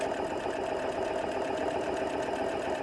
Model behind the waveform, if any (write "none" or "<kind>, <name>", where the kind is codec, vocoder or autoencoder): none